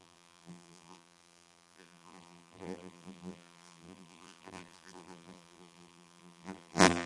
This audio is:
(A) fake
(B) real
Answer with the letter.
A